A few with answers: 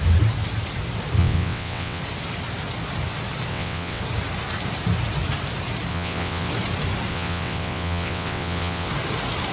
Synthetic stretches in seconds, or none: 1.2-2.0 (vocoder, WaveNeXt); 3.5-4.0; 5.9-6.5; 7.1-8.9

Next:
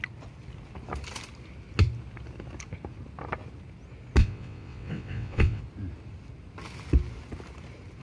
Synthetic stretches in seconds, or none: 4.2-5.6 (vocoder, WaveNeXt)

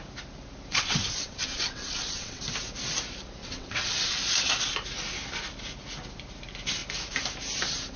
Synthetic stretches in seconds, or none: 0.7-2.4 (vocoder, WaveNeXt); 3.4-4.1

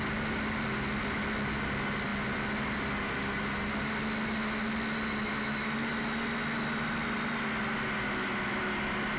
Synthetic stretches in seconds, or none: none

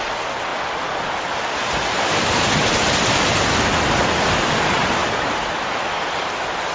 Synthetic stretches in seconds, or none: none